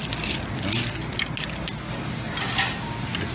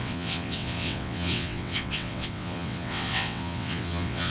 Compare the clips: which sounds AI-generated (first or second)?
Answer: second